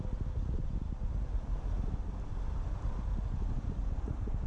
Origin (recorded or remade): recorded